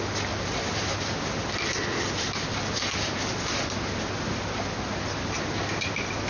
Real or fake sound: real